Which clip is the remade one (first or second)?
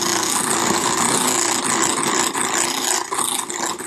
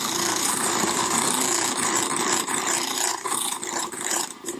second